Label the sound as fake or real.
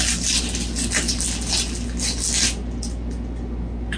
real